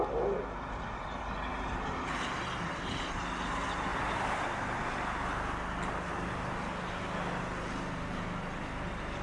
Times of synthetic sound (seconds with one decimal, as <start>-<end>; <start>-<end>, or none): none